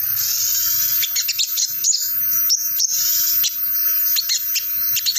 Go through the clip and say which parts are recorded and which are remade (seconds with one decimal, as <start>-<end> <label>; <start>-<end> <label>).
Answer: 0.0-5.2 recorded